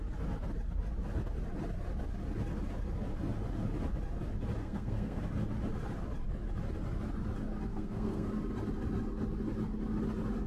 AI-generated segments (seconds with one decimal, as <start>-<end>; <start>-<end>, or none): 4.6-5.2; 7.7-8.3